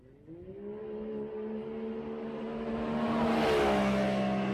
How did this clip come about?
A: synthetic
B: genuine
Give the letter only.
B